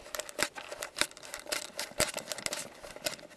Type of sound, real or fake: real